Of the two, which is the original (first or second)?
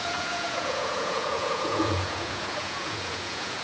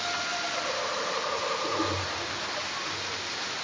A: second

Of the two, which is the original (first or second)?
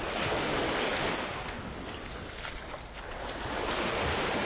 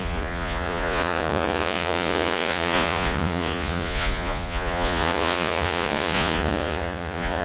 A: first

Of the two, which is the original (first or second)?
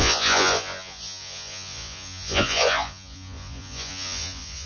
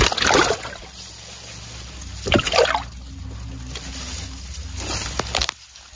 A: second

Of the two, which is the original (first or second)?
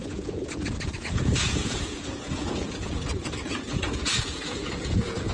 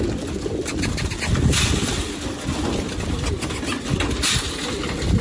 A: second